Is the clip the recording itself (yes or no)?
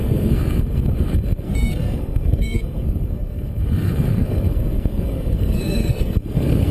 no